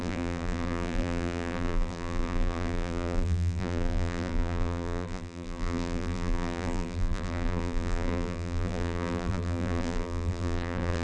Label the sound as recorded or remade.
remade